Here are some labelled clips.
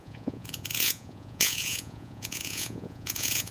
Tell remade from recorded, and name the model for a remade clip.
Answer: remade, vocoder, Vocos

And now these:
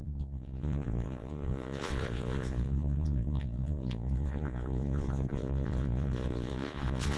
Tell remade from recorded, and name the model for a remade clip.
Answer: remade, vocoder, Vocos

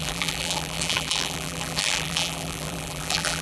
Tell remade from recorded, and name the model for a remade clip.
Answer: remade, vocoder, BigVGAN v2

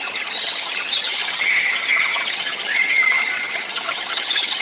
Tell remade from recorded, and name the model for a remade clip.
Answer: remade, vocoder, HiFi-GAN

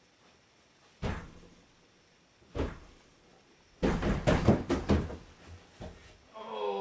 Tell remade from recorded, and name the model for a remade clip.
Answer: recorded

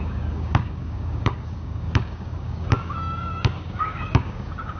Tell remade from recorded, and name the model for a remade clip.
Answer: remade, codec, DAC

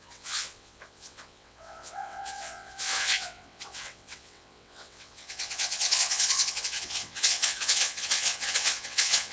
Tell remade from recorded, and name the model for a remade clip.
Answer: remade, vocoder, WaveNeXt